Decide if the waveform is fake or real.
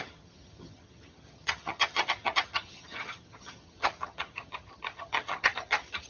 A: fake